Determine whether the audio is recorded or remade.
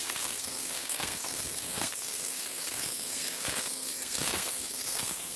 remade